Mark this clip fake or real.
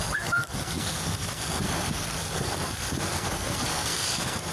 fake